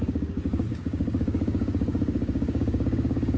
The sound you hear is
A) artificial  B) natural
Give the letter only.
A